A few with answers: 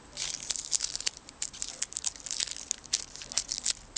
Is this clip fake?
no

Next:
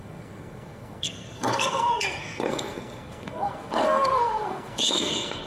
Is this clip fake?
yes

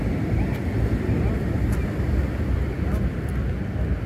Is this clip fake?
no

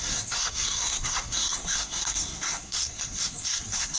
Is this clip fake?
yes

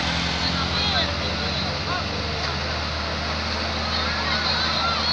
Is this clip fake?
no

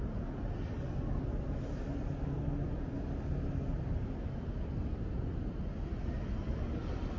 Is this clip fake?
no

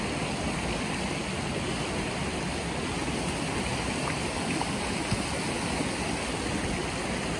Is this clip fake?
no